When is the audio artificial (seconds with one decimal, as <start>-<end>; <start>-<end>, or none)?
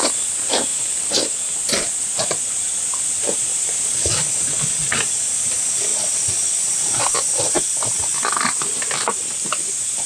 0.7-1.3; 3.5-4.2; 5.9-9.4